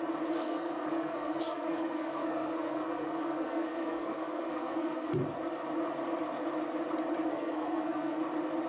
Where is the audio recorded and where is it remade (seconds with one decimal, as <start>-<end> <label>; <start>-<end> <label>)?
0.0-0.4 recorded; 0.4-5.1 remade; 5.1-7.3 recorded; 7.3-8.2 remade; 8.2-8.7 recorded